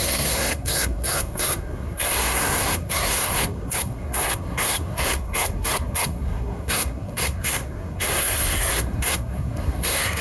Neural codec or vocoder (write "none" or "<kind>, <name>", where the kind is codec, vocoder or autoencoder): codec, SNAC